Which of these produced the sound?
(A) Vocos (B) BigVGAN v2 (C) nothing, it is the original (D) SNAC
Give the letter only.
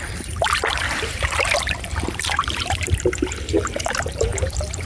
B